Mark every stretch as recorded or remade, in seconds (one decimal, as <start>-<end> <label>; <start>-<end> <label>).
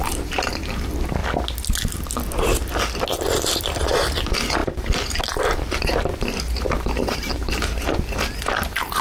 0.0-1.2 remade; 1.2-3.6 recorded; 3.6-9.0 remade